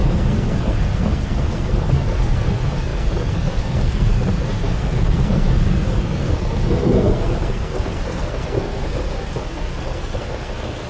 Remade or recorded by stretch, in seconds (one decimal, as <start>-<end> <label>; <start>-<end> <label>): 0.0-10.9 remade